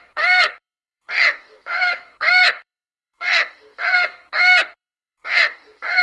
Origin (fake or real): fake